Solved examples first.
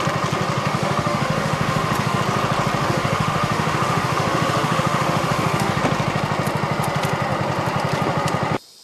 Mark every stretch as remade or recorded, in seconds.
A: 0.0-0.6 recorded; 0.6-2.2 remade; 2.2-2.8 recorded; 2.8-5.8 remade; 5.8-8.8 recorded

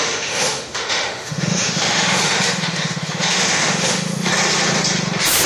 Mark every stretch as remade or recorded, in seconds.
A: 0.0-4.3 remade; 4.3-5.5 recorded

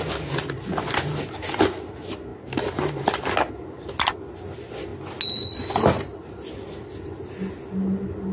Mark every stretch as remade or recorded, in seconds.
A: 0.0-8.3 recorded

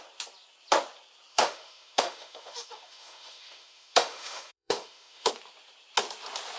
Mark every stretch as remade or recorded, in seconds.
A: 0.0-1.3 recorded; 1.3-5.3 remade; 5.3-6.6 recorded

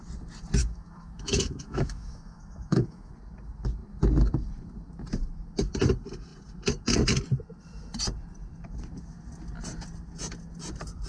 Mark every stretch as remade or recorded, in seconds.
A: 0.0-0.6 recorded; 0.6-3.1 remade; 3.1-11.1 recorded